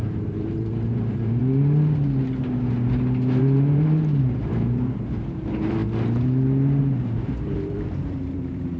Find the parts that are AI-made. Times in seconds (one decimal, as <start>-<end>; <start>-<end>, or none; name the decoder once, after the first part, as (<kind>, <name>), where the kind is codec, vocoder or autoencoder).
0.0-1.4 (vocoder, BigVGAN v2); 3.4-5.8; 6.8-8.8